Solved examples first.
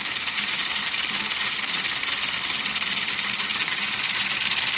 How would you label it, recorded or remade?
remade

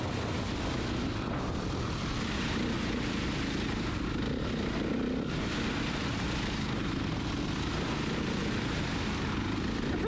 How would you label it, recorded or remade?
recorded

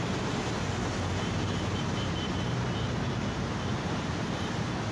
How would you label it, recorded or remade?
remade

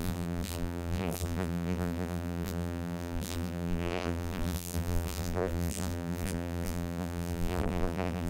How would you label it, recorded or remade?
remade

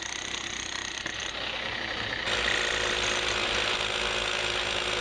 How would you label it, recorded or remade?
recorded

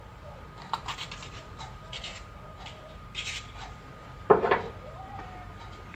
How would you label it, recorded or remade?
remade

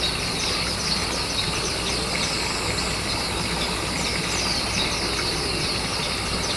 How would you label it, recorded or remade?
recorded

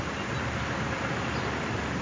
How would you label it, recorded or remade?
remade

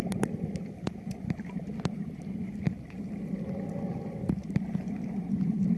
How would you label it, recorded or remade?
remade